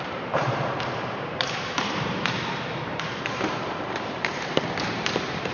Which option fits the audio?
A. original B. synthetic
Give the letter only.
B